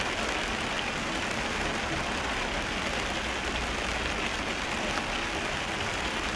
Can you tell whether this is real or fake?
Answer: real